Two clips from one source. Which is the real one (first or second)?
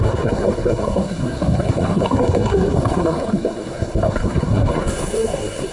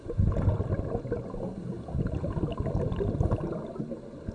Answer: second